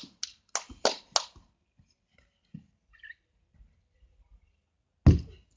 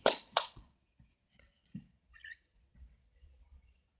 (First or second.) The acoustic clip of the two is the first